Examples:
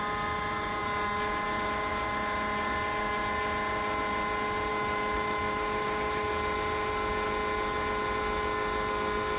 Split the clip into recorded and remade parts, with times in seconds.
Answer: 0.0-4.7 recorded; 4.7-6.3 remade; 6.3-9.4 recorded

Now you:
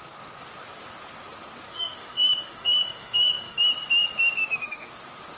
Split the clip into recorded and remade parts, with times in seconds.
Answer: 0.0-1.7 recorded; 1.7-3.6 remade; 3.6-4.4 recorded; 4.4-4.9 remade; 4.9-5.4 recorded